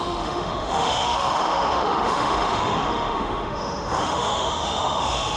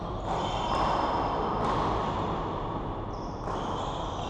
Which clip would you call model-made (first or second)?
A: first